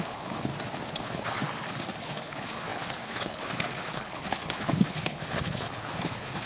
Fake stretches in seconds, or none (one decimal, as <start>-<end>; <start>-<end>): 0.0-0.5; 1.0-1.4; 2.0-6.5